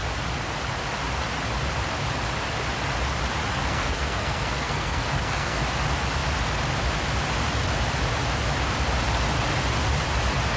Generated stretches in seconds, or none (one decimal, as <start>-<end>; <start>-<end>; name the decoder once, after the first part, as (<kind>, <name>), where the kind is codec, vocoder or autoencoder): 3.5-5.6 (codec, SNAC)